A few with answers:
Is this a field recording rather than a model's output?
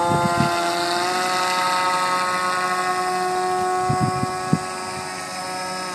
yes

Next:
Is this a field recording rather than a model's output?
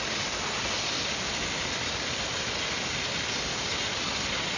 yes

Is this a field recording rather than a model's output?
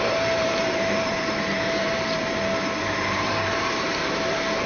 no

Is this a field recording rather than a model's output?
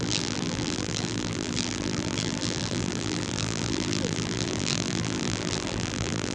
no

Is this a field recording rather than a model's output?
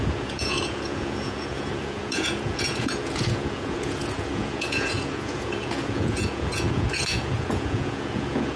no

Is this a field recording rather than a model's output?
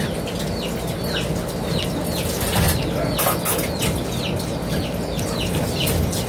yes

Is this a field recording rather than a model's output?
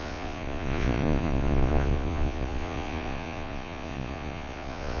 no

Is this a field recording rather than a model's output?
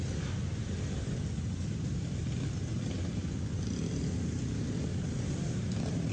yes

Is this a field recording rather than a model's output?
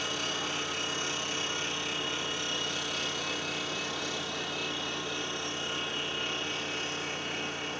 yes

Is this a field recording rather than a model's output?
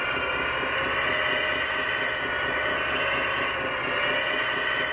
yes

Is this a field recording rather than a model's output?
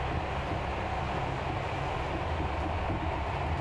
yes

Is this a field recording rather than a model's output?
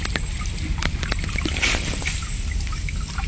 yes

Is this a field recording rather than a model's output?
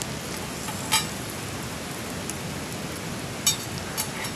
yes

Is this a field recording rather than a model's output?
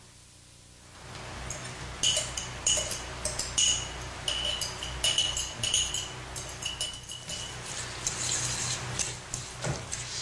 yes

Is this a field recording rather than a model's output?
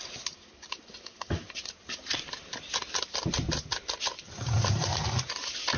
yes